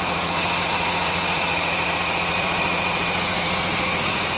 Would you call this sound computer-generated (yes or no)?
yes